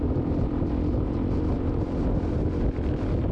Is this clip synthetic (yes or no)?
no